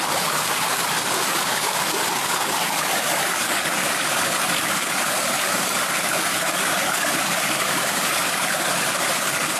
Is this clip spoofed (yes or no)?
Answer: yes